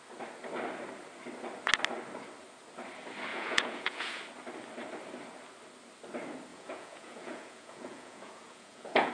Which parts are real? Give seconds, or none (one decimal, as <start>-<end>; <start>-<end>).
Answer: 0.0-3.3; 4.2-6.5